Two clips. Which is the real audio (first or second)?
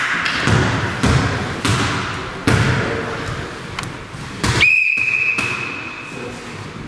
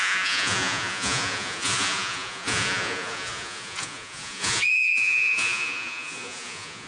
first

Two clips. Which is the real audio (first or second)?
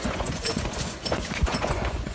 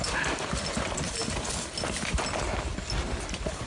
second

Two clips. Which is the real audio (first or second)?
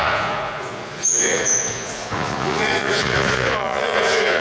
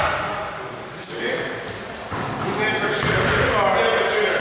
second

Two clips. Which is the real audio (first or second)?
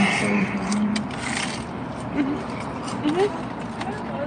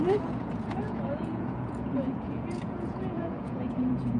first